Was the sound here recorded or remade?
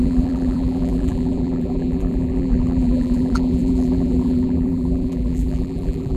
remade